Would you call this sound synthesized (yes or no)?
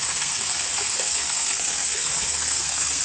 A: yes